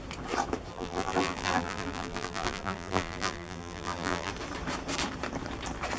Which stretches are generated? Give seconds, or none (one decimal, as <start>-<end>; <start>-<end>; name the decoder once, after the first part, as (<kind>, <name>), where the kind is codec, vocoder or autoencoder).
0.7-4.3 (vocoder, BigVGAN v2)